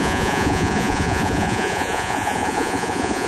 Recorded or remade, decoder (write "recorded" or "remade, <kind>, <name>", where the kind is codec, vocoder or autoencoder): remade, vocoder, Vocos